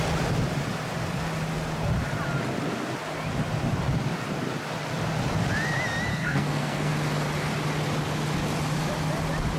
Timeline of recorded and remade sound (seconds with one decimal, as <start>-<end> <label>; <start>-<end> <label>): 0.0-6.1 recorded; 6.1-6.9 remade; 6.9-9.6 recorded